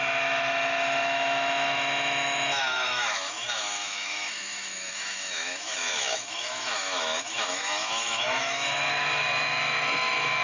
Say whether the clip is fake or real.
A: fake